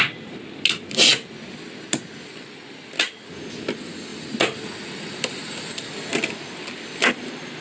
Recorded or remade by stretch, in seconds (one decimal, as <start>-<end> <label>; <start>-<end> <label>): 0.0-7.6 recorded